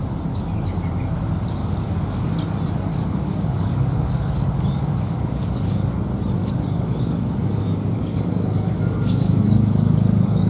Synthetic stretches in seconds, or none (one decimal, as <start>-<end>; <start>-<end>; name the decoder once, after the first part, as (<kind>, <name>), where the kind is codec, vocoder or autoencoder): 1.6-2.3 (codec, DAC); 2.9-5.9; 6.4-10.5